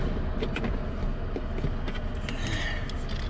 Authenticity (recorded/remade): recorded